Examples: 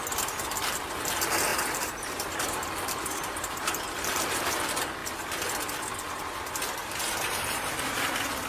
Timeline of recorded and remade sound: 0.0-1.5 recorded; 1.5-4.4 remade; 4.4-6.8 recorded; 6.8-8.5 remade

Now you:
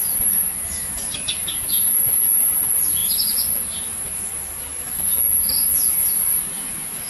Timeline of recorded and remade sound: 0.0-7.1 recorded

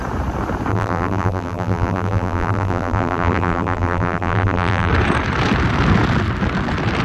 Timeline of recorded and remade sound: 0.0-0.7 recorded; 0.7-4.9 remade; 4.9-7.0 recorded

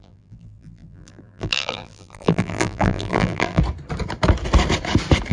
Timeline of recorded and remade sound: 0.0-3.6 remade; 3.6-5.3 recorded

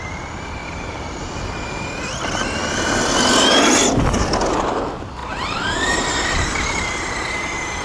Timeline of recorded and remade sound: 0.0-0.6 recorded; 0.6-1.2 remade; 1.2-5.2 recorded; 5.2-7.3 remade; 7.3-7.8 recorded

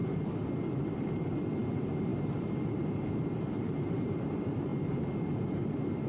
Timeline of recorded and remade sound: 0.0-1.7 recorded; 1.7-4.7 remade; 4.7-5.4 recorded; 5.4-6.1 remade

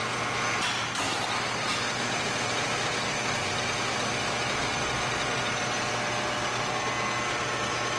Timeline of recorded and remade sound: 0.0-8.0 recorded